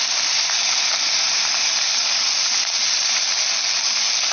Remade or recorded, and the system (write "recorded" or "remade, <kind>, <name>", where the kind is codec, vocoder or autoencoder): recorded